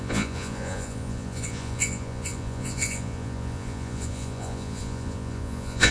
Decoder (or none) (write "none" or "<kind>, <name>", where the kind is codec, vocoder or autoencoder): vocoder, Vocos